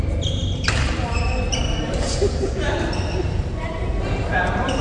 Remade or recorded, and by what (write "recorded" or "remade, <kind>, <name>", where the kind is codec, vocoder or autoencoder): remade, vocoder, BigVGAN v2